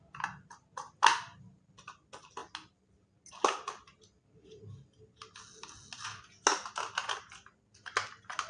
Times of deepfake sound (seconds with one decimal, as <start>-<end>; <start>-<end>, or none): none